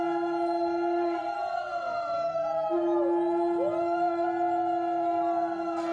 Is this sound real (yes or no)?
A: yes